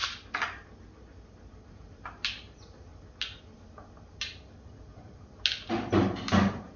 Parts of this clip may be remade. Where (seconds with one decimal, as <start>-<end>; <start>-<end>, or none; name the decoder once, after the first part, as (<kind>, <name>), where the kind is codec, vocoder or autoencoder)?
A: 1.7-2.9 (vocoder, BigVGAN v2); 5.9-6.8